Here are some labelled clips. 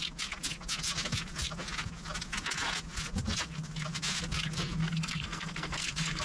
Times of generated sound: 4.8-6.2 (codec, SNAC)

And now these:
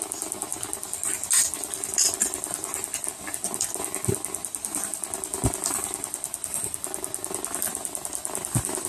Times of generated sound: none

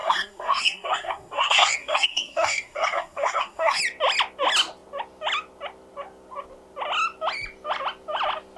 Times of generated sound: 0.0-3.8 (codec, SNAC)